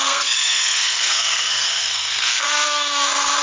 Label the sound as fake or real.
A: fake